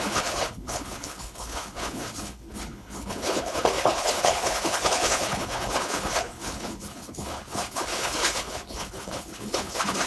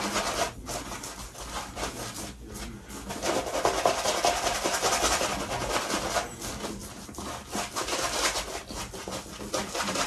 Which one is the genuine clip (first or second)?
second